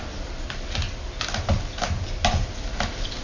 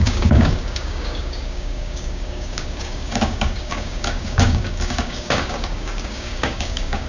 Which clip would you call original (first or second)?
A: first